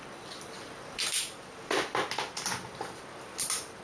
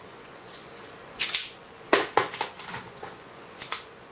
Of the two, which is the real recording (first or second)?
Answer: first